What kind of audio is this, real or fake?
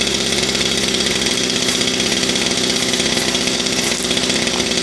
real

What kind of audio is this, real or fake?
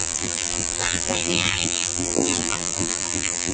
fake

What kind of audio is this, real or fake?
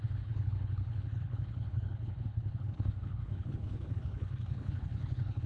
fake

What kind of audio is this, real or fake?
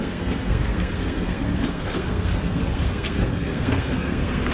fake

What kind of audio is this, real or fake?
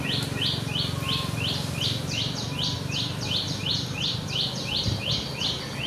real